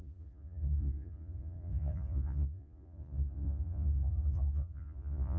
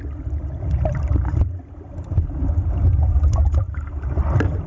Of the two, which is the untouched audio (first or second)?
second